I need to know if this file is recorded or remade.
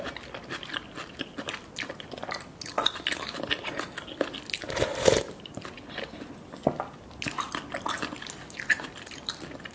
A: recorded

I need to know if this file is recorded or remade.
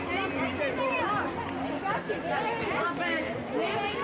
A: recorded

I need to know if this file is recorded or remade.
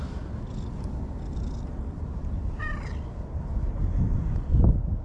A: recorded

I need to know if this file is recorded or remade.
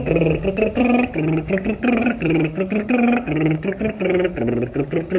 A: remade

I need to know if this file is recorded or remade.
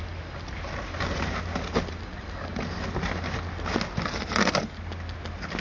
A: recorded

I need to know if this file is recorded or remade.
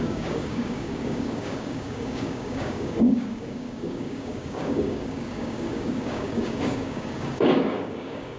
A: remade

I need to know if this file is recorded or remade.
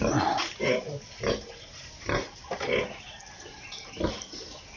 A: recorded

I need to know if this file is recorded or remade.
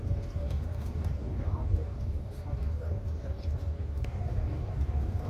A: remade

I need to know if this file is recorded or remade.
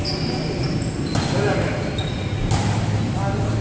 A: recorded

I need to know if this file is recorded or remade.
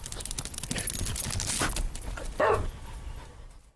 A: recorded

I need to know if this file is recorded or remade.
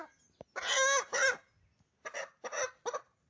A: recorded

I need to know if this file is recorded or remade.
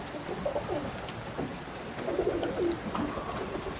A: recorded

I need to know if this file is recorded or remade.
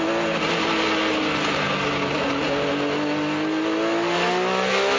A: recorded